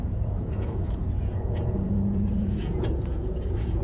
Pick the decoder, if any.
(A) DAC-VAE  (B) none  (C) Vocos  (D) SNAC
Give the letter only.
C